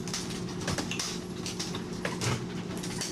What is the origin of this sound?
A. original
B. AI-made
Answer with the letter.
A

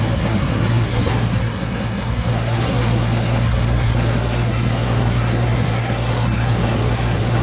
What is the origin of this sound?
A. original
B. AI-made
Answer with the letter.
B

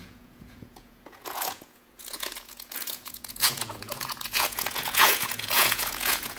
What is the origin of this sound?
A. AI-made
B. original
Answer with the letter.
A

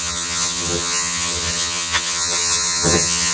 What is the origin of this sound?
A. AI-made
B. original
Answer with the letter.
A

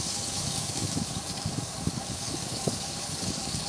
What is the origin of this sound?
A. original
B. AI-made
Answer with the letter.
B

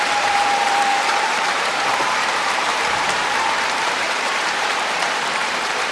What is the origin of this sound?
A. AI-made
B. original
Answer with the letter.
A